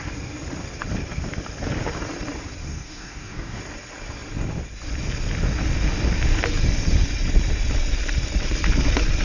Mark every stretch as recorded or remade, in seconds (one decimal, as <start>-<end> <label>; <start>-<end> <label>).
0.0-2.6 recorded; 2.6-3.6 remade; 3.6-9.2 recorded